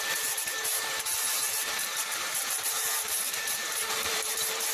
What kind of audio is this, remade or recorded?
remade